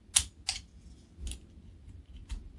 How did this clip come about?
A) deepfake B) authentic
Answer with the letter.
B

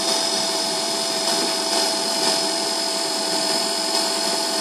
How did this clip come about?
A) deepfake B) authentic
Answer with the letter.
A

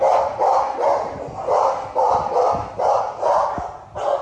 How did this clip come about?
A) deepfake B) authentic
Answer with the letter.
B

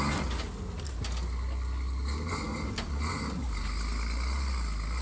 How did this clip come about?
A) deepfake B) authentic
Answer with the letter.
B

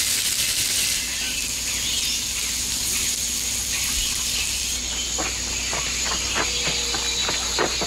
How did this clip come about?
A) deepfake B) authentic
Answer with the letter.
B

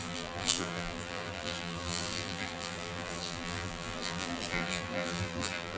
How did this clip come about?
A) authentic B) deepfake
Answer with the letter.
B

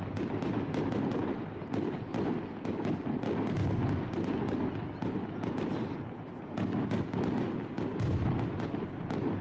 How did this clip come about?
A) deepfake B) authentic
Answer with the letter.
B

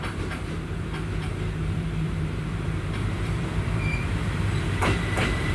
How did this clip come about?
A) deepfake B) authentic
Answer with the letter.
A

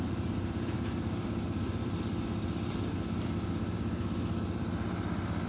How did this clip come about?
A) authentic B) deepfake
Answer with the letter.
B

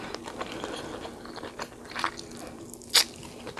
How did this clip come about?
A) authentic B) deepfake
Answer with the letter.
A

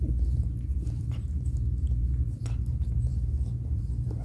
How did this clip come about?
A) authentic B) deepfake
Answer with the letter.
B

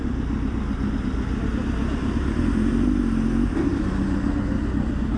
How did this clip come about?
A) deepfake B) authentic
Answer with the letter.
B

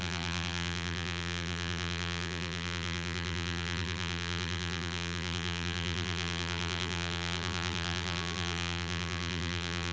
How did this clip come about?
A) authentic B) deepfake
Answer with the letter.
B